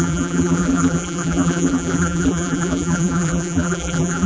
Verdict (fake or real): fake